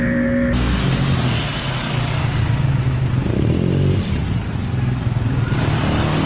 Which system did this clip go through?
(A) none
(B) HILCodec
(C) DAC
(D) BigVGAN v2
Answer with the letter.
A